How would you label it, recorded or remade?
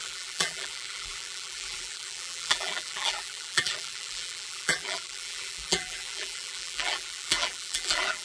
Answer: remade